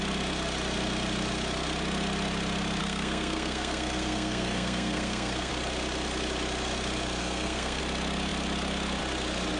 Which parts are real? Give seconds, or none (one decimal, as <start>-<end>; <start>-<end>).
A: 0.0-2.8; 5.5-7.2; 7.8-9.6